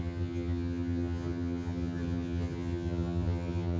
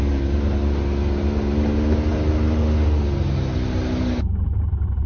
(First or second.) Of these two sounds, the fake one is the first